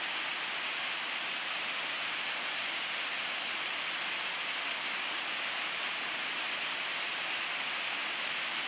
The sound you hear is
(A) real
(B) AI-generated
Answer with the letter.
A